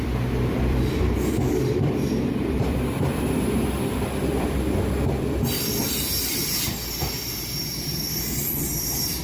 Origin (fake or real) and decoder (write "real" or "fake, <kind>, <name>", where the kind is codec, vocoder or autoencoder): fake, vocoder, BigVGAN v2